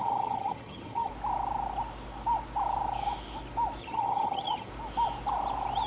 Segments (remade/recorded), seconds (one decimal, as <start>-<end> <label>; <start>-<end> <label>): 0.0-1.1 remade; 1.1-3.8 recorded; 3.8-4.7 remade; 4.7-5.9 recorded

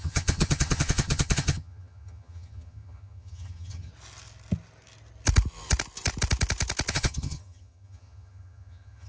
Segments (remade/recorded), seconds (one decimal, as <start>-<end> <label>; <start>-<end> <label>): 0.0-3.9 remade; 3.9-6.9 recorded; 6.9-9.1 remade

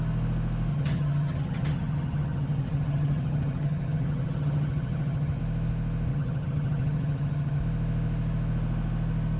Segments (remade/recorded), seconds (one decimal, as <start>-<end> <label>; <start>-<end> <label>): 0.0-0.7 recorded; 0.7-5.4 remade; 5.4-6.1 recorded; 6.1-7.6 remade; 7.6-9.4 recorded

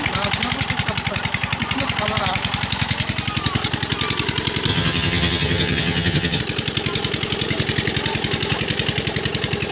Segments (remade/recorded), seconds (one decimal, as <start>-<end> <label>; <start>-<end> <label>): 0.0-4.7 recorded; 4.7-6.4 remade; 6.4-9.7 recorded

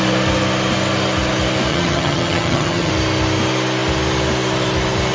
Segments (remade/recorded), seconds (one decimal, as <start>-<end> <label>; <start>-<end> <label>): 0.0-1.7 recorded; 1.7-2.9 remade; 2.9-5.1 recorded

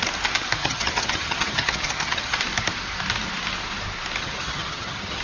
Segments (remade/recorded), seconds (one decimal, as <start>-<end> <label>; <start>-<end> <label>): 0.0-0.6 recorded; 0.6-2.4 remade; 2.4-4.2 recorded; 4.2-5.2 remade